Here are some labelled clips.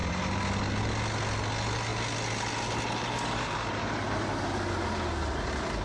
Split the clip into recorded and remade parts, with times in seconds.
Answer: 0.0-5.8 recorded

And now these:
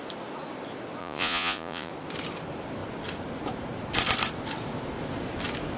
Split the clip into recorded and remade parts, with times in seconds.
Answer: 0.0-1.0 recorded; 1.0-1.9 remade; 1.9-5.8 recorded

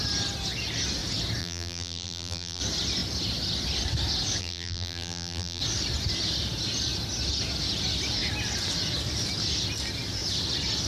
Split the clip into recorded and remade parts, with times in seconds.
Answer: 0.0-1.4 recorded; 1.4-2.6 remade; 2.6-4.4 recorded; 4.4-5.6 remade; 5.6-10.9 recorded

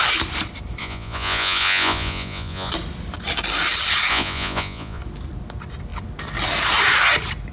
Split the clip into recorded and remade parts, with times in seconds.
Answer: 0.0-0.8 recorded; 0.8-2.7 remade; 2.7-4.1 recorded; 4.1-5.0 remade; 5.0-7.5 recorded

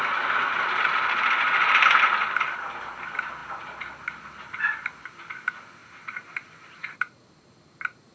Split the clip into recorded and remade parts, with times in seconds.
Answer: 0.0-0.5 recorded; 0.5-2.8 remade; 2.8-5.8 recorded; 5.8-8.1 remade

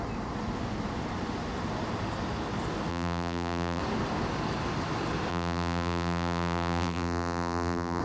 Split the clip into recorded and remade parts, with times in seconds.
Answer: 0.0-2.9 recorded; 2.9-3.8 remade; 3.8-5.3 recorded; 5.3-8.0 remade

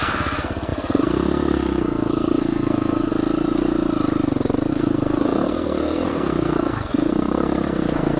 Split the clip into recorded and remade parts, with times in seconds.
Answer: 0.0-3.1 remade; 3.1-4.7 recorded; 4.7-8.2 remade